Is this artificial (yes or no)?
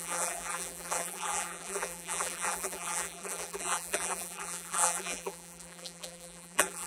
yes